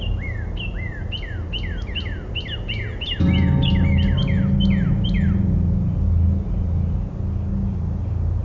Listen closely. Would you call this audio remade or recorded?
recorded